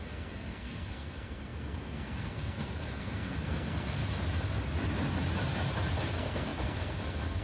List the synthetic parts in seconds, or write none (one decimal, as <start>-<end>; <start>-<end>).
0.0-4.0; 6.1-7.4